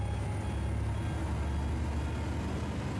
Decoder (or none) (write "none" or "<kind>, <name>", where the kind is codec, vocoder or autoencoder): none